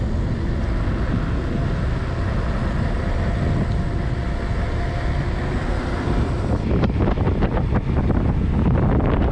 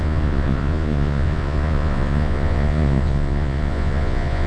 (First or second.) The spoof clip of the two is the second